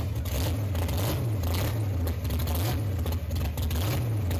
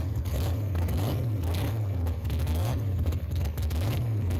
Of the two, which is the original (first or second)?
first